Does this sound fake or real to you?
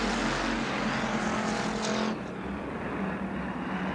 real